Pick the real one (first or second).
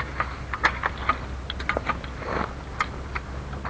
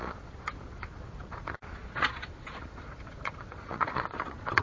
first